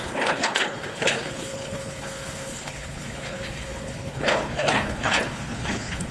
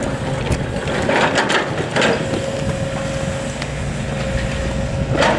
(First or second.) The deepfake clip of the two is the first